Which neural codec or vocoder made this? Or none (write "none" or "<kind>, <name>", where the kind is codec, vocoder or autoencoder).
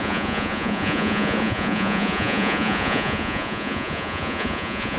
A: vocoder, Vocos